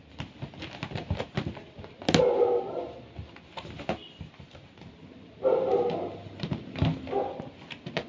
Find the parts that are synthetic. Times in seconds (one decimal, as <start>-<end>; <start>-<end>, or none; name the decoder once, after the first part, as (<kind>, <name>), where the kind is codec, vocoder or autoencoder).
none